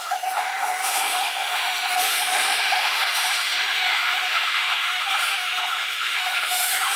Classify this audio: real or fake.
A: fake